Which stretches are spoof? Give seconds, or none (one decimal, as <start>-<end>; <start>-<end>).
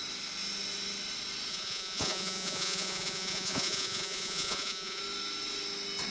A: 1.5-5.0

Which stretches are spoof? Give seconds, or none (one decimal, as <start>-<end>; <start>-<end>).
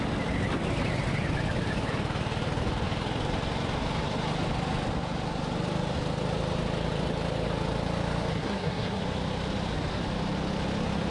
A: 8.3-9.0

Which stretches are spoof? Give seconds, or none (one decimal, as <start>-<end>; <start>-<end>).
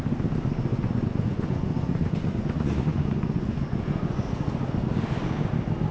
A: 0.7-4.2